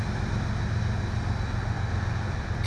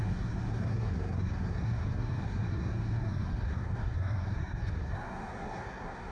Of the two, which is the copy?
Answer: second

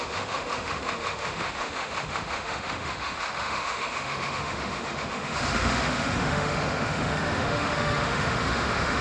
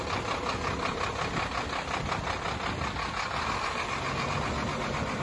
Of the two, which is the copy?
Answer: first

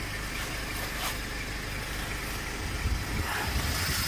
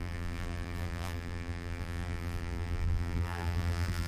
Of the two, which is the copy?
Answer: second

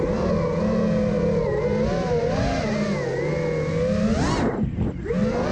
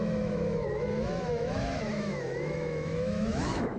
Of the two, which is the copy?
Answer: second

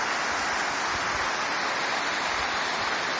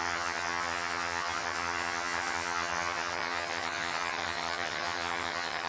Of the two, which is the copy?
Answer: second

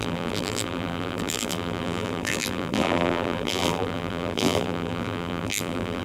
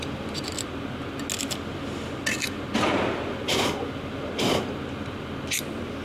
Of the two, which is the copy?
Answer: first